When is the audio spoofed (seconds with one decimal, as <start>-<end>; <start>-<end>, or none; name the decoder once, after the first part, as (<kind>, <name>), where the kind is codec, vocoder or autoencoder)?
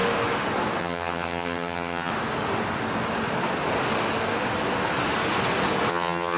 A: 0.8-2.1 (vocoder, HiFi-GAN); 5.9-6.4